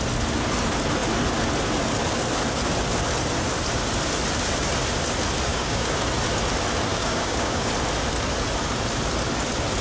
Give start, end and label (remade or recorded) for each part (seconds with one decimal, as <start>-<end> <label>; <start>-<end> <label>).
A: 0.0-5.5 recorded; 5.5-6.0 remade; 6.0-6.9 recorded; 6.9-7.7 remade; 7.7-9.8 recorded